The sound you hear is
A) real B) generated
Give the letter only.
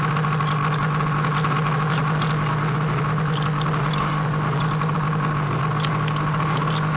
A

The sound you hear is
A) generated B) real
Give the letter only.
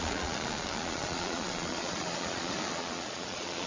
A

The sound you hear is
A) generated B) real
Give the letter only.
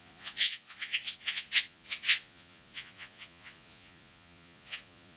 A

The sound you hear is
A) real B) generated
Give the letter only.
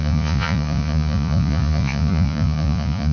B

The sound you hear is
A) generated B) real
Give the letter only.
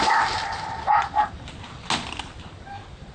B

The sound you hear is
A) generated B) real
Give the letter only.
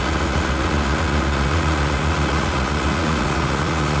A